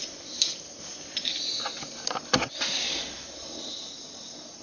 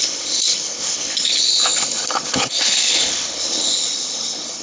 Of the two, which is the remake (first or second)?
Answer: second